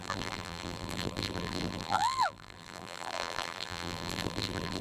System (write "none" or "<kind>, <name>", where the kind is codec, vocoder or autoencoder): vocoder, BigVGAN v2